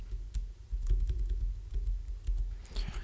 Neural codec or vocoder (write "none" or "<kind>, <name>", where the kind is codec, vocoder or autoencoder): none